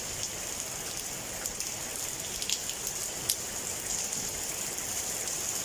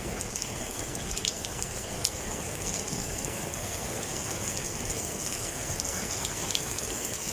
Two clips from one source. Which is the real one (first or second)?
first